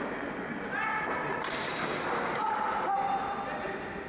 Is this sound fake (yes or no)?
yes